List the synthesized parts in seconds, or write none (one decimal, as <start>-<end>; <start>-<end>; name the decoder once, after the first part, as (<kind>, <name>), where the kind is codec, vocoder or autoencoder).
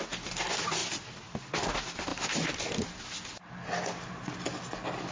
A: none